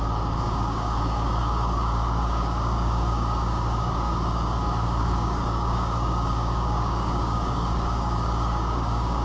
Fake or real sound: fake